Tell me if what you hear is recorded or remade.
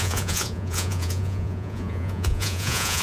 remade